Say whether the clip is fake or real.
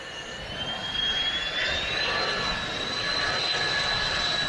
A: real